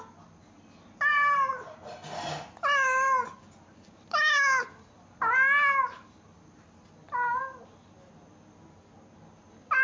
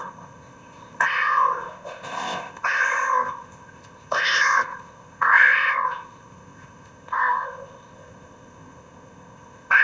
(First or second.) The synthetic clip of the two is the second